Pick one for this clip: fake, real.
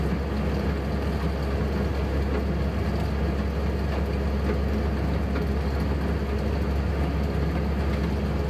real